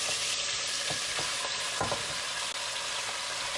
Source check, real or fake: real